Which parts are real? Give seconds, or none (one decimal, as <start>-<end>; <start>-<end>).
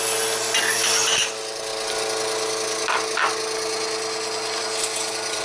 1.7-4.6